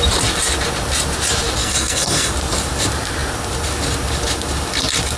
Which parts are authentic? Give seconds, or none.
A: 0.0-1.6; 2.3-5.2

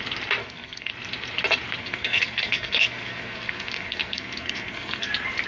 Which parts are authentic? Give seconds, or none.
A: 0.0-0.4; 0.9-1.8; 5.1-5.5

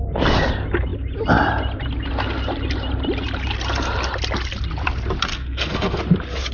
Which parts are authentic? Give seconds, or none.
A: 0.0-5.3; 6.0-6.5

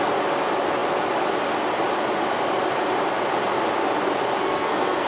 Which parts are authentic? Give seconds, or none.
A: 0.0-4.4